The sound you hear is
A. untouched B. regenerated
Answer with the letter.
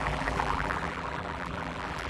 B